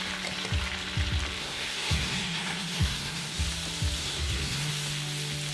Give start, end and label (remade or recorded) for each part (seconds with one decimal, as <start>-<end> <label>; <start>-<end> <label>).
0.0-1.4 recorded; 1.4-3.4 remade; 3.4-4.0 recorded; 4.0-4.7 remade; 4.7-5.5 recorded